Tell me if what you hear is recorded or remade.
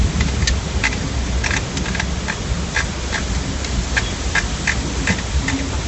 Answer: recorded